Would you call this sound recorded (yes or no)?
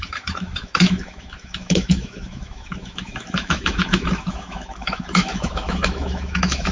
no